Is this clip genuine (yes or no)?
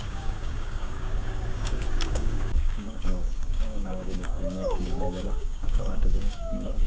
no